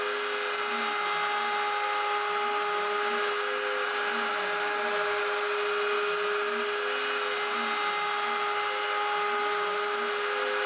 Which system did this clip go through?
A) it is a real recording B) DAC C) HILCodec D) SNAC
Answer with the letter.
A